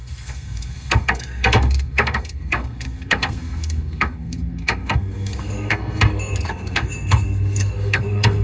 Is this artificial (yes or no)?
yes